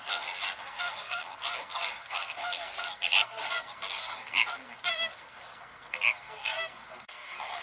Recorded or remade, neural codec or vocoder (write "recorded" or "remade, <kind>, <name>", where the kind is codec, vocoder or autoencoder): remade, codec, SNAC